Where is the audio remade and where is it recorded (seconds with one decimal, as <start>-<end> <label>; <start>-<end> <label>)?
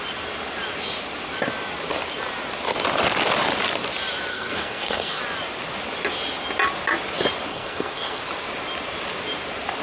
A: 0.0-4.3 recorded; 4.3-5.2 remade; 5.2-7.5 recorded; 7.5-8.2 remade; 8.2-9.8 recorded